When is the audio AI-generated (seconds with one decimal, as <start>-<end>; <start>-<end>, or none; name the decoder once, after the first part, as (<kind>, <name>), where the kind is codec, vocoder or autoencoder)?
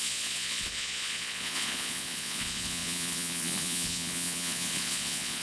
0.0-5.4 (vocoder, Vocos)